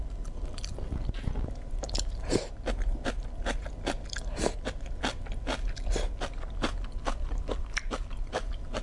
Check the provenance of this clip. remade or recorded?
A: recorded